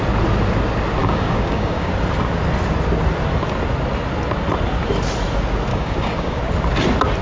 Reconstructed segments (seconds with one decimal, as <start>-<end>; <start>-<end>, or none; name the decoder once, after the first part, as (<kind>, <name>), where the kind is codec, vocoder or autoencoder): 1.0-1.9 (codec, DAC); 5.7-6.4